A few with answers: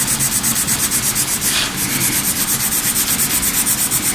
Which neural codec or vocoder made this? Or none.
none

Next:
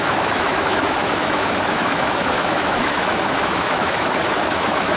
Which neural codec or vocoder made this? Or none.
autoencoder, DAC-VAE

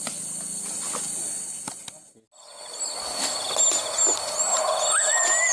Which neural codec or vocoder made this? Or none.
none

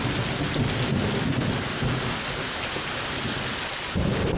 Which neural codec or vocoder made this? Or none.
none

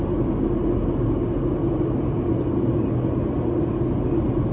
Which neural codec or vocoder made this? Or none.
none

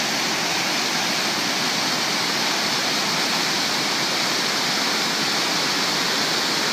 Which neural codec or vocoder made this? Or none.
none